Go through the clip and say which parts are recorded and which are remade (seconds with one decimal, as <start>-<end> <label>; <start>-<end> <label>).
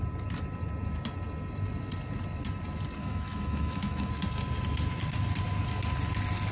0.0-3.0 recorded; 3.0-4.1 remade; 4.1-6.5 recorded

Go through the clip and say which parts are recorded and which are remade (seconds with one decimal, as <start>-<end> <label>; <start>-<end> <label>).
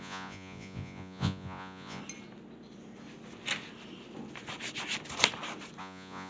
0.0-2.0 remade; 2.0-5.8 recorded; 5.8-6.3 remade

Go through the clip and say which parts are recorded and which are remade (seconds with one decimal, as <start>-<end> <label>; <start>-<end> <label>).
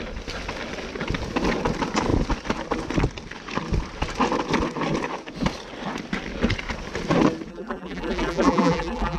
0.0-7.5 recorded; 7.5-9.2 remade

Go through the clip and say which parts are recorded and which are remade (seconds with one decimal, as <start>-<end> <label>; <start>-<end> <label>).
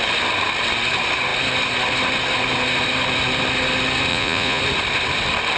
0.0-4.1 recorded; 4.1-4.6 remade; 4.6-5.6 recorded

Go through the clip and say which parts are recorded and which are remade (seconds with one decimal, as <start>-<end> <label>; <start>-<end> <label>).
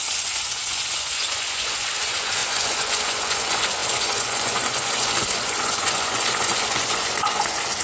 0.0-7.8 remade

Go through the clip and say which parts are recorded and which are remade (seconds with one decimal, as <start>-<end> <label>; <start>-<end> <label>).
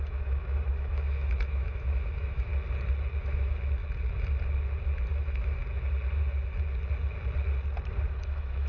0.0-2.5 remade; 2.5-3.2 recorded; 3.2-3.8 remade; 3.8-5.1 recorded; 5.1-5.6 remade; 5.6-8.2 recorded; 8.2-8.7 remade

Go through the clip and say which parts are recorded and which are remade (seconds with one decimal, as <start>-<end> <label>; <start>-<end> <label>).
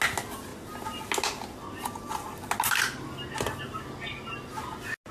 0.0-5.1 recorded